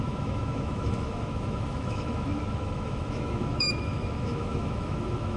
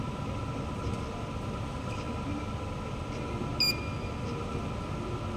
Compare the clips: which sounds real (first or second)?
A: second